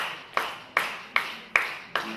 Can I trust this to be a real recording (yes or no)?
yes